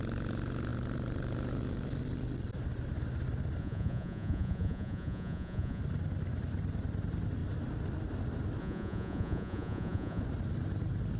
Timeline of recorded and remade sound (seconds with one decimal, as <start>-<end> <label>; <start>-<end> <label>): 0.0-3.6 recorded; 3.6-5.8 remade; 5.8-8.6 recorded; 8.6-10.2 remade; 10.2-11.2 recorded